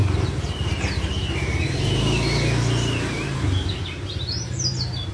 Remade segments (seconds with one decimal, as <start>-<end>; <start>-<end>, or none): none